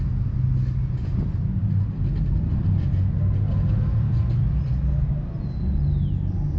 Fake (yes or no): no